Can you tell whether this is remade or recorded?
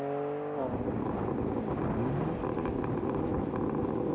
recorded